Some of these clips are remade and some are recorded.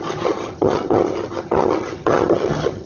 remade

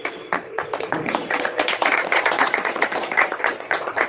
remade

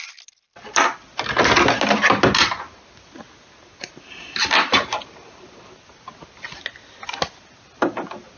recorded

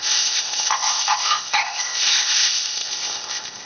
remade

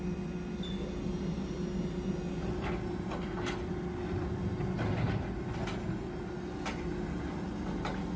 recorded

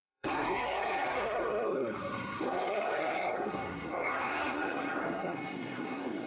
remade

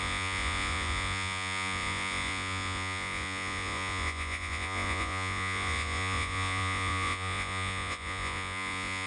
remade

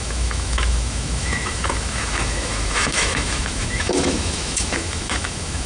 remade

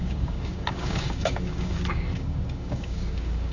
remade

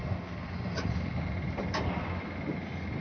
recorded